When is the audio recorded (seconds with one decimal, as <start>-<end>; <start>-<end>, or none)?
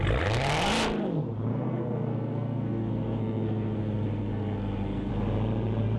0.0-1.5; 5.1-6.0